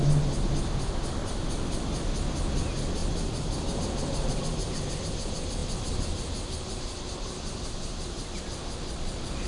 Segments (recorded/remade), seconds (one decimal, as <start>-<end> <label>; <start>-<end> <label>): 0.0-9.5 recorded